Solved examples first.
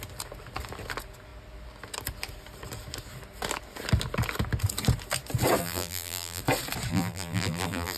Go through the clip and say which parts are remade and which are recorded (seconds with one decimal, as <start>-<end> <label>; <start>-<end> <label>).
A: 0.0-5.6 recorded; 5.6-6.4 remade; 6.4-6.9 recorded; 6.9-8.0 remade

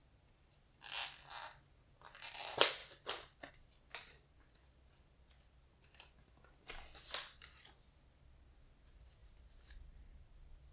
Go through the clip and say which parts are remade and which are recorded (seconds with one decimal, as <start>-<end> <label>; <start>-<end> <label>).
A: 0.0-10.7 recorded

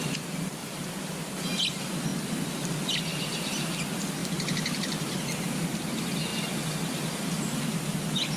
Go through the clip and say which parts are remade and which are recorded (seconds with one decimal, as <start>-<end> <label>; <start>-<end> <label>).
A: 0.0-0.6 recorded; 0.6-1.3 remade; 1.3-4.2 recorded; 4.2-5.2 remade; 5.2-8.4 recorded

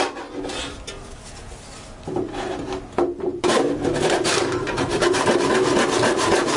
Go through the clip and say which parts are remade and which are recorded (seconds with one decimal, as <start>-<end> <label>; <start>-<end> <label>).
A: 0.0-3.3 recorded; 3.3-5.5 remade; 5.5-6.6 recorded

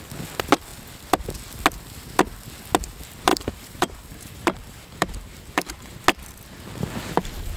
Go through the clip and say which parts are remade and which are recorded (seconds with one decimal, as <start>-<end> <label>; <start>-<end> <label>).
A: 0.0-3.3 recorded; 3.3-6.0 remade; 6.0-7.6 recorded